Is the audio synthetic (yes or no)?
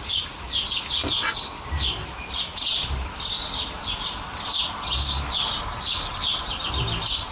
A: no